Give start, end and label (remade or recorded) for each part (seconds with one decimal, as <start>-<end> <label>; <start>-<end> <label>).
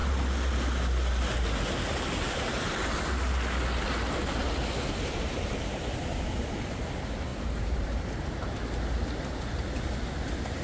0.0-7.3 recorded; 7.3-8.5 remade; 8.5-10.6 recorded